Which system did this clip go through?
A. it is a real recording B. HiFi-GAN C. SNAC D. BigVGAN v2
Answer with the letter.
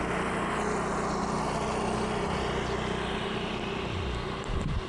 A